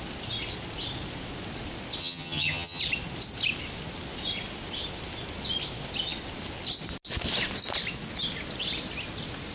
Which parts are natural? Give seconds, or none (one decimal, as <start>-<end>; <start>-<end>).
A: 0.0-2.0; 2.8-9.5